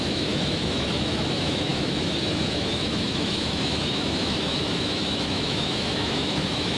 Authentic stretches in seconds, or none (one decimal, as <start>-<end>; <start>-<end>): none